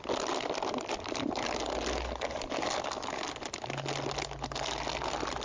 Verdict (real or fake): real